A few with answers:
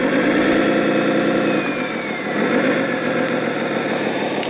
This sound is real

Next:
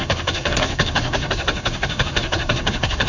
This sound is fake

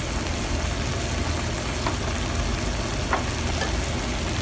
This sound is real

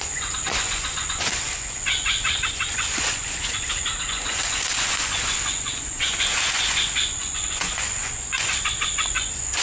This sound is fake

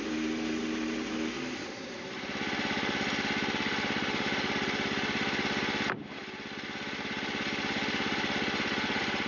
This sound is real